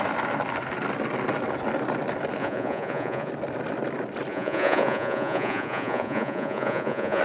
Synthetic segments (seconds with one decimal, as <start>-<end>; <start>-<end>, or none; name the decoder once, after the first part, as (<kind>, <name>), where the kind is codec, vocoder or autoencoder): 2.4-3.3 (vocoder, Vocos); 4.3-7.2